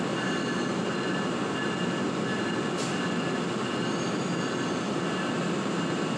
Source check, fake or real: real